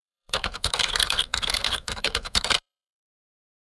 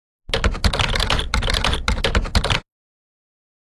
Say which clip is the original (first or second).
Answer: second